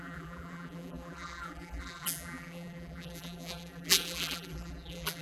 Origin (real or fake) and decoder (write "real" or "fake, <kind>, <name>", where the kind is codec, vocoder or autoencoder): fake, vocoder, BigVGAN v2